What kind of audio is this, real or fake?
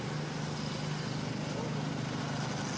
real